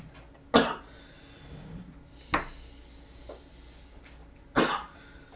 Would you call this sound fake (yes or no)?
no